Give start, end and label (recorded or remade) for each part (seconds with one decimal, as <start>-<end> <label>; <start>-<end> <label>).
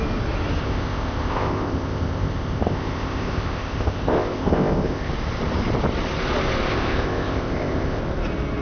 0.0-0.6 recorded; 0.6-5.1 remade; 5.1-6.7 recorded; 6.7-8.0 remade; 8.0-8.6 recorded